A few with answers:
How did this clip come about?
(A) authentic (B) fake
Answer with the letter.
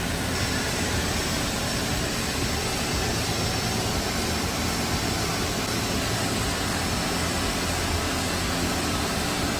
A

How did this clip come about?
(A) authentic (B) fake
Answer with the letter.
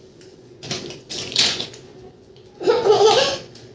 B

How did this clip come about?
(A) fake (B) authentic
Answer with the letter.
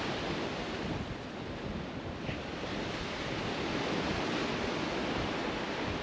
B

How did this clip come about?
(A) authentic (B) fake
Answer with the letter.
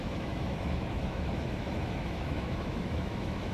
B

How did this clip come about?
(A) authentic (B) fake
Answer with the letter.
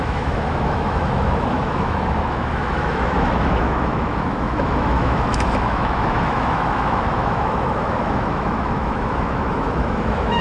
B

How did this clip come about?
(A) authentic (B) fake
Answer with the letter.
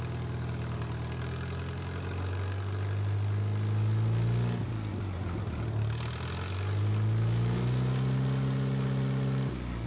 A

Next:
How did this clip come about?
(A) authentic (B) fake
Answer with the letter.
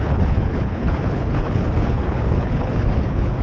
B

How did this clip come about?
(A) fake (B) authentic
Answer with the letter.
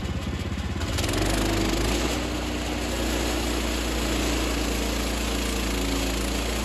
B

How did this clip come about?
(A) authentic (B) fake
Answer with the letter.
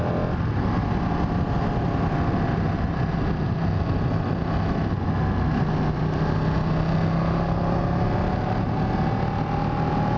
A